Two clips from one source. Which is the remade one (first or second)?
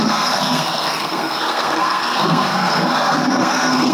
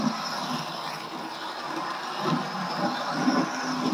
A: first